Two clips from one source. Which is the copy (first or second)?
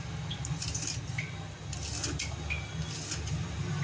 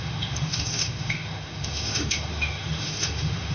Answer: second